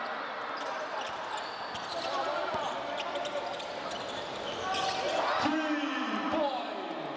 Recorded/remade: recorded